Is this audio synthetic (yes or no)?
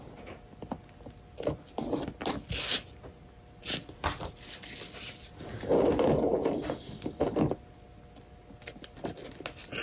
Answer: no